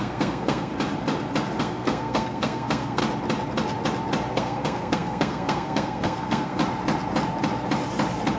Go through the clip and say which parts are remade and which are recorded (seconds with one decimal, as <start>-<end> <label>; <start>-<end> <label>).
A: 0.0-0.7 remade; 0.7-1.6 recorded; 1.6-3.0 remade; 3.0-4.3 recorded; 4.3-6.6 remade; 6.6-8.4 recorded